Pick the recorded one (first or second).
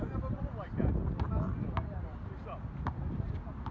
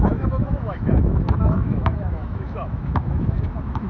first